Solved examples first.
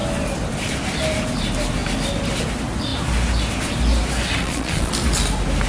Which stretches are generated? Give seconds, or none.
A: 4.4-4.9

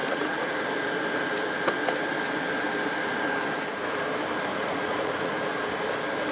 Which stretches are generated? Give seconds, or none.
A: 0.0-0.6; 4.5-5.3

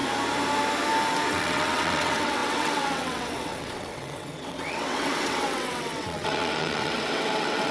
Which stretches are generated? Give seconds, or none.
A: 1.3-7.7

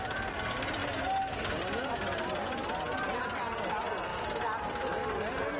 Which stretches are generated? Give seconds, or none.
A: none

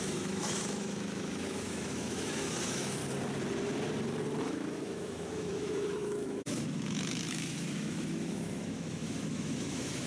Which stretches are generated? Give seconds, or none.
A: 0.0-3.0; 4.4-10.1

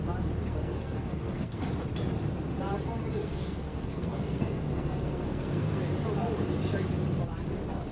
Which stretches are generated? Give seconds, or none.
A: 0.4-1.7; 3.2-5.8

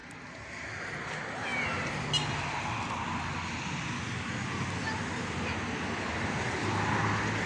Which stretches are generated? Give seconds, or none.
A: none